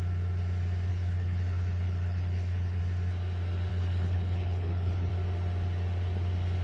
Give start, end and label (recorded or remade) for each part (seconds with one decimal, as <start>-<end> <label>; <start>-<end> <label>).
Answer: 0.0-0.9 recorded; 0.9-2.8 remade; 2.8-3.7 recorded; 3.7-5.1 remade; 5.1-6.6 recorded